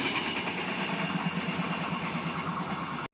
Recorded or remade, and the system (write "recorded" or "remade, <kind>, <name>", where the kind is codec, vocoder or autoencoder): recorded